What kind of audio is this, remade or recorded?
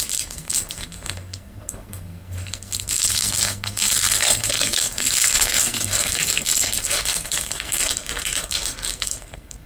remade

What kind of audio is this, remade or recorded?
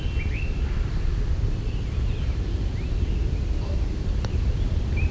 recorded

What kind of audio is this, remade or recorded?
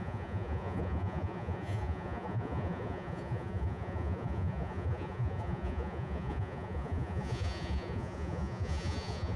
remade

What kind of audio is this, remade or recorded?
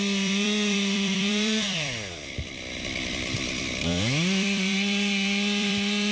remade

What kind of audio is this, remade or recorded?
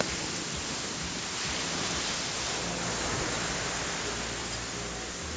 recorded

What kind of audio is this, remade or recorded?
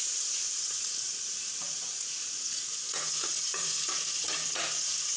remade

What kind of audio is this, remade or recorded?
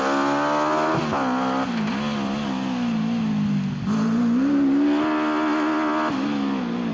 recorded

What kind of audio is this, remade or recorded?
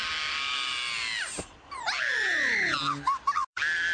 recorded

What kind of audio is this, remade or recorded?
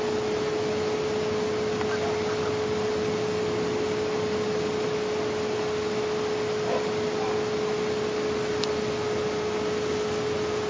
recorded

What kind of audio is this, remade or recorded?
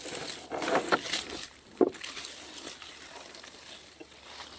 recorded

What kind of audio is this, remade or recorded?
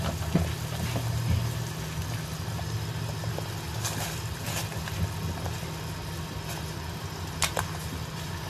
recorded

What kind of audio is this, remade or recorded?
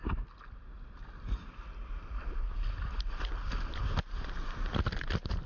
recorded